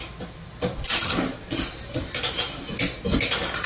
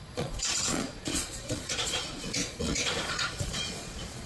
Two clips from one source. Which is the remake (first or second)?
second